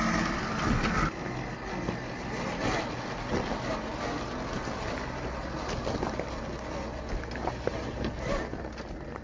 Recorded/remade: recorded